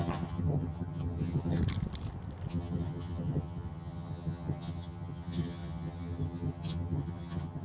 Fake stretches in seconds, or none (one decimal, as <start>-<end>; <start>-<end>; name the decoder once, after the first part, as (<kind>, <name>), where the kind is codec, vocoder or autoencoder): 0.0-1.6 (vocoder, HiFi-GAN); 2.5-7.6